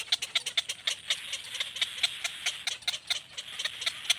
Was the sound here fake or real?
real